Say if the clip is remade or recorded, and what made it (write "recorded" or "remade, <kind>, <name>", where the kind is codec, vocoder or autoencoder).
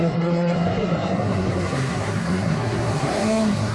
remade, codec, SNAC